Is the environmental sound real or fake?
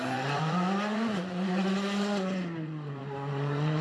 fake